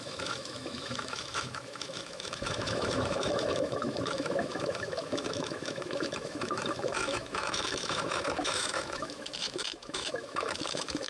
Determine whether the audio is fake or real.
fake